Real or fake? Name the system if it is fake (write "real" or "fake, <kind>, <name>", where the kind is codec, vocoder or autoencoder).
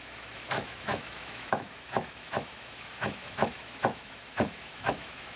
fake, autoencoder, DAC-VAE